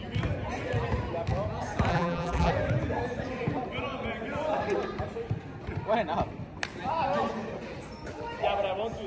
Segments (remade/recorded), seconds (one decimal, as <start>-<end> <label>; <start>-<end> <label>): 0.0-1.9 recorded; 1.9-2.5 remade; 2.5-9.1 recorded